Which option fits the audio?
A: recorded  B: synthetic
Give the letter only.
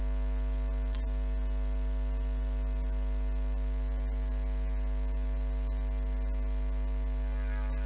A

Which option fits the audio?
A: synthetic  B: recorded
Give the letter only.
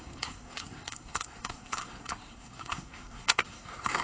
A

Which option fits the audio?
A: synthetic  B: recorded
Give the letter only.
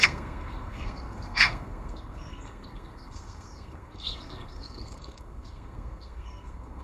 A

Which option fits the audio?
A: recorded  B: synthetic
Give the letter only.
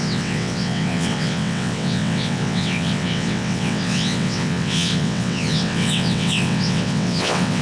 B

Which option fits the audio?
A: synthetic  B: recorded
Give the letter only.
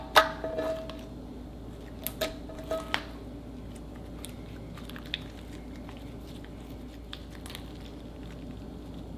B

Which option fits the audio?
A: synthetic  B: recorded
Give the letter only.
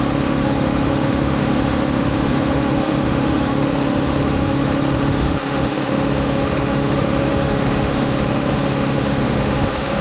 A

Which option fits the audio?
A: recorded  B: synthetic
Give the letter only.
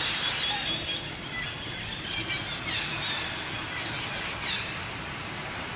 A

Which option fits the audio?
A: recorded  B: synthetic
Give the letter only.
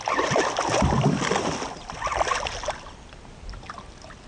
A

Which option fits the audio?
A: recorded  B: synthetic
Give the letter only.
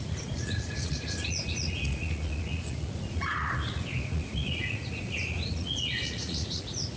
B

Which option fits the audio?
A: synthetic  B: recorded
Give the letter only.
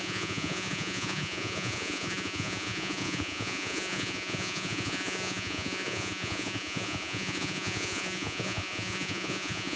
A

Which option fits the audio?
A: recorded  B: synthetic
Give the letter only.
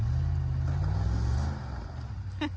A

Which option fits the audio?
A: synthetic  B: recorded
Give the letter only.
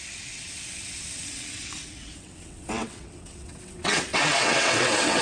A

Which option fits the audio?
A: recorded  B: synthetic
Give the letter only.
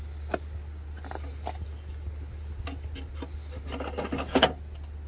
A